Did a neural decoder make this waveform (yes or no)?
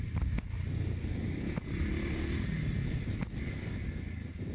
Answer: no